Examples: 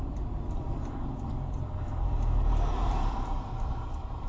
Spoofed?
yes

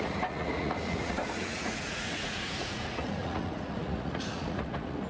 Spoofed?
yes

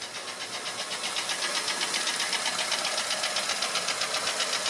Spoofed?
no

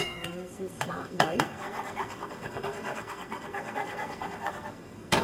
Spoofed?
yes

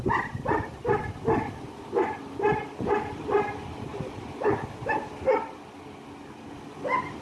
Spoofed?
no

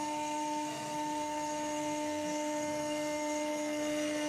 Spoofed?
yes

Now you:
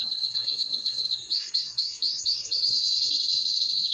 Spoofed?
yes